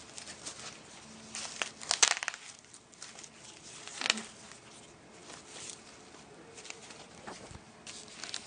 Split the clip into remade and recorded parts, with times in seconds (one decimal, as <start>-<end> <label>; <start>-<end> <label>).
0.0-8.5 recorded